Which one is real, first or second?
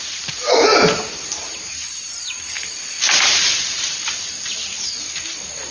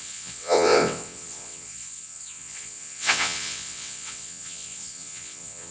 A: first